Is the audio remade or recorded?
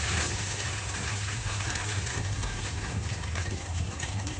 remade